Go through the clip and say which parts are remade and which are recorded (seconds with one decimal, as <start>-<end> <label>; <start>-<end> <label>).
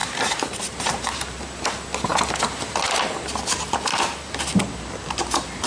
0.0-1.4 remade; 1.4-5.7 recorded